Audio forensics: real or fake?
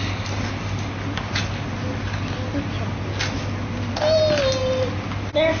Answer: real